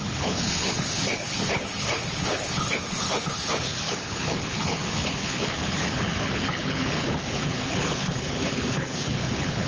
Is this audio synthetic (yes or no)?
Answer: yes